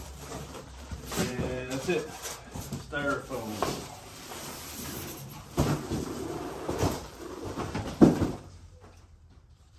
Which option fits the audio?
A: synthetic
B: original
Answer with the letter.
A